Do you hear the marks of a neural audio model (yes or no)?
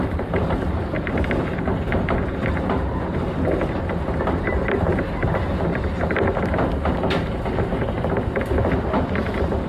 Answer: no